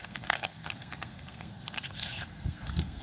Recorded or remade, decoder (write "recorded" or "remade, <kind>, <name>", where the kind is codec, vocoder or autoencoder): remade, codec, SNAC